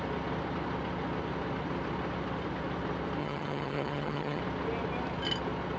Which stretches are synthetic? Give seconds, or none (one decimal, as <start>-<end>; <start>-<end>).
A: 3.2-4.4